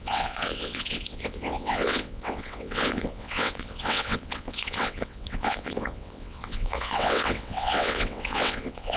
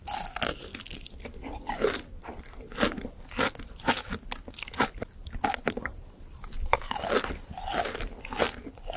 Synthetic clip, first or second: first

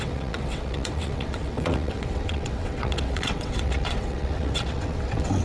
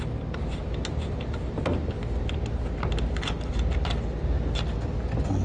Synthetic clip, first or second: first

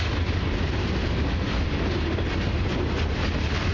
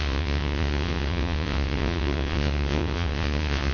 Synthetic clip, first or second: second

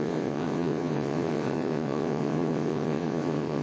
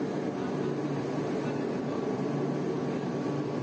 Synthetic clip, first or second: first